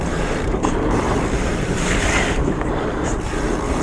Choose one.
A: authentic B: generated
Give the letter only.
B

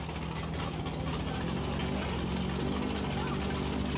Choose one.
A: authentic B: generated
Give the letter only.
A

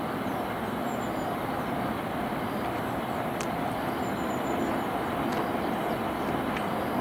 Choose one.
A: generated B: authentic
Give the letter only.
B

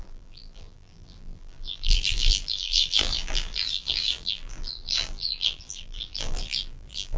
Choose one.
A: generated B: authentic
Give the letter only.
A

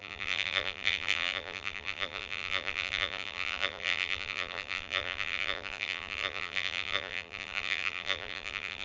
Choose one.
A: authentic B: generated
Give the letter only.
B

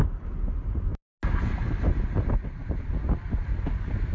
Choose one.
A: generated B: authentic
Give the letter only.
B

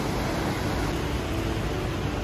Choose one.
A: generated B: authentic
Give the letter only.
B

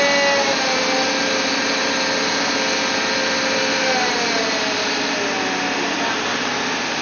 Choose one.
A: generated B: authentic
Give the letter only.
B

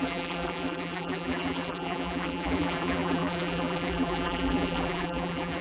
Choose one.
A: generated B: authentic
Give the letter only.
A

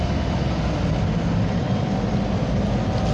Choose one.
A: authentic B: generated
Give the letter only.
A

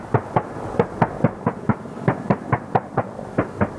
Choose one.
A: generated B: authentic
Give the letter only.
B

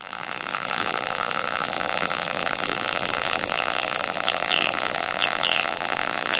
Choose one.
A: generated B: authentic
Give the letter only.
A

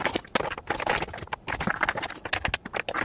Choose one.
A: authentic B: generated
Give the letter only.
A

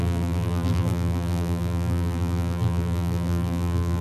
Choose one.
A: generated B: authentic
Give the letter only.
A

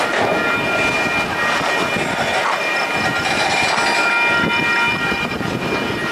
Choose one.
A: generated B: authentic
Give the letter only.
B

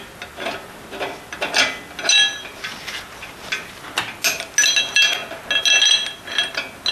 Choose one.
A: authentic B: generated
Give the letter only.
A